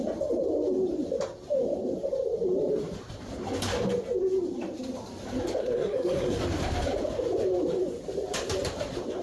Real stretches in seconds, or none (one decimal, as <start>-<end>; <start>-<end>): 0.0-5.6; 6.4-9.2